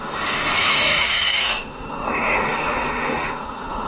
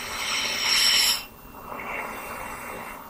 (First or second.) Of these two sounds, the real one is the second